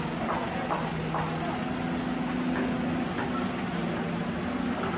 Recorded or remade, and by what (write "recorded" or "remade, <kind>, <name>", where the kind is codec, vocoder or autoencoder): recorded